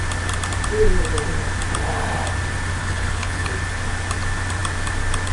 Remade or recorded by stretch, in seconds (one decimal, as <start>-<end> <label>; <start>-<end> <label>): 0.0-2.8 recorded; 2.8-3.5 remade; 3.5-5.3 recorded